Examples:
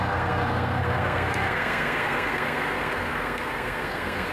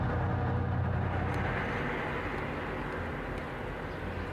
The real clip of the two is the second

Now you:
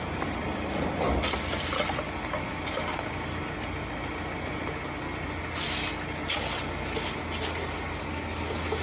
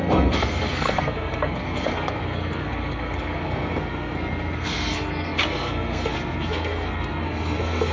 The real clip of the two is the first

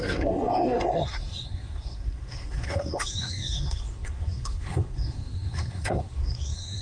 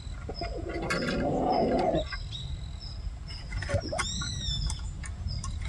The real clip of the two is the second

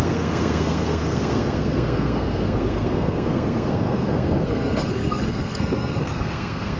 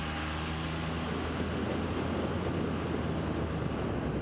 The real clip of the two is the second